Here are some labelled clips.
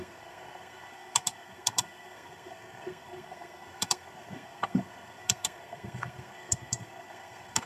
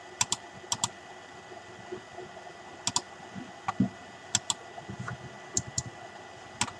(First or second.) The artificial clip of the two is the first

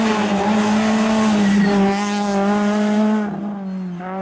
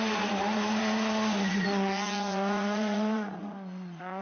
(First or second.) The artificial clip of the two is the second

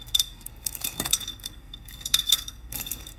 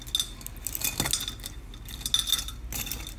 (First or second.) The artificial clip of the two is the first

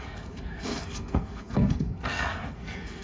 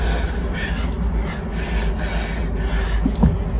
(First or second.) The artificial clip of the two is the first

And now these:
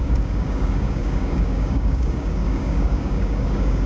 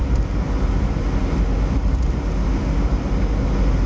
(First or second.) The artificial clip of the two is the first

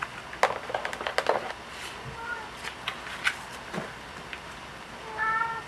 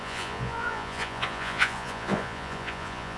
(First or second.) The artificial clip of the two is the second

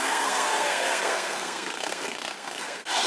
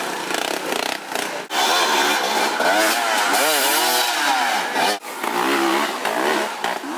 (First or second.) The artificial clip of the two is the first